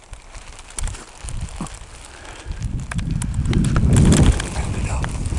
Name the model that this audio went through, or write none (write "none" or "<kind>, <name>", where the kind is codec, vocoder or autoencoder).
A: none